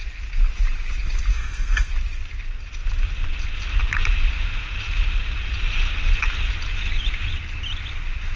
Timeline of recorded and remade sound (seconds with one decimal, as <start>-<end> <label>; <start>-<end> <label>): 0.0-1.3 recorded; 1.3-1.9 remade; 1.9-8.4 recorded